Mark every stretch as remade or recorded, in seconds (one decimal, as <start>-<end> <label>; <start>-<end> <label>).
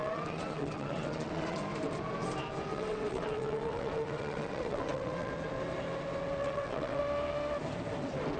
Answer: 0.0-1.6 remade; 1.6-2.7 recorded; 2.7-5.3 remade; 5.3-6.4 recorded; 6.4-7.0 remade; 7.0-8.4 recorded